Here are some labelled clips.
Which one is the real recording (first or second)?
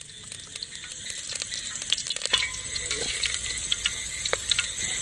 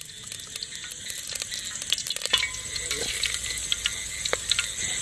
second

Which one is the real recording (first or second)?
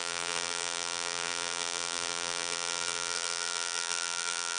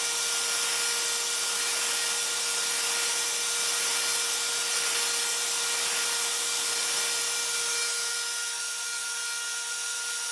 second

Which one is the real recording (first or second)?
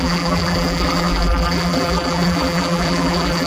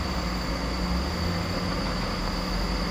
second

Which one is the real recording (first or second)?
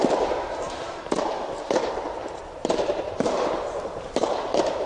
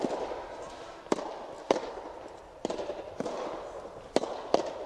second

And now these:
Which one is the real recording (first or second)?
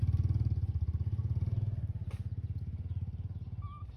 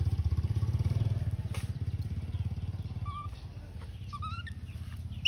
first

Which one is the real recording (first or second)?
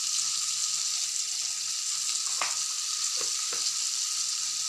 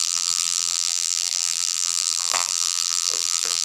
first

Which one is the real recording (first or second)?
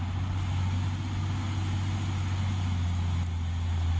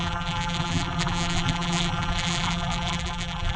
first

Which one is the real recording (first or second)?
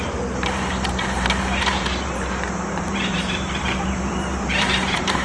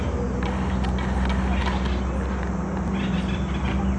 second